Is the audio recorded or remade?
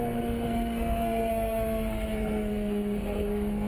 remade